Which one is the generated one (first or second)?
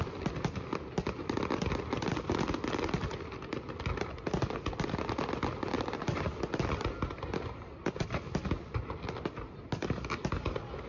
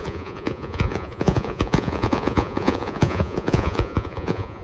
second